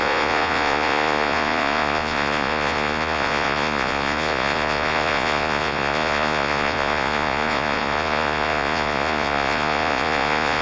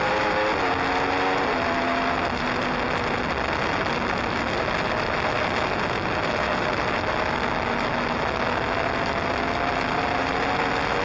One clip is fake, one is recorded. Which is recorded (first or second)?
second